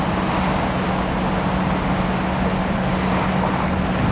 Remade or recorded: recorded